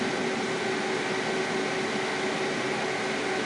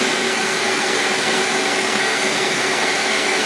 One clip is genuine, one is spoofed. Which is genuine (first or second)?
first